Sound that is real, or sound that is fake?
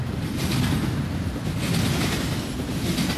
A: real